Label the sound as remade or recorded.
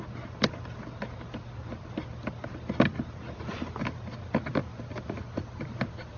recorded